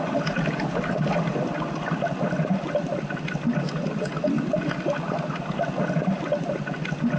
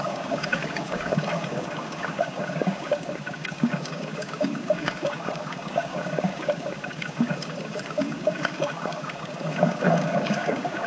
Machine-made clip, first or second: second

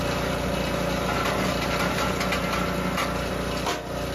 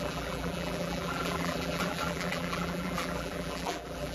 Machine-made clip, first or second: second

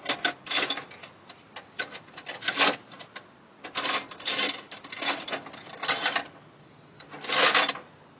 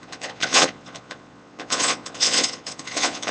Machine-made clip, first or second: second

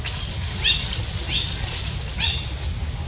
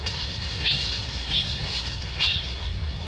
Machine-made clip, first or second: second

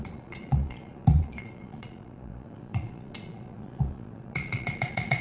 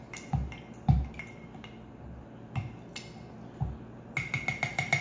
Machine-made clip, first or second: first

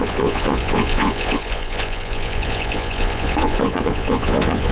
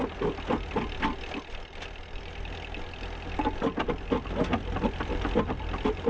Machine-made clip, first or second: first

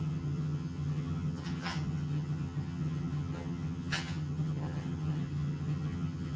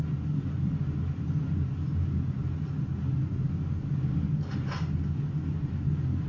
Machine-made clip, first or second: first